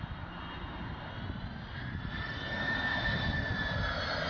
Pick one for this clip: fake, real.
real